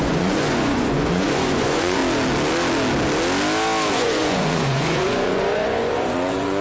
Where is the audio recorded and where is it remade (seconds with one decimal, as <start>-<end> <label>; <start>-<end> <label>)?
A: 0.0-2.0 remade; 2.0-3.9 recorded; 3.9-6.6 remade